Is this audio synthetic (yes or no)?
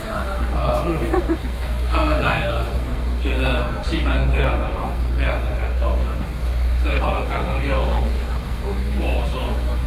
yes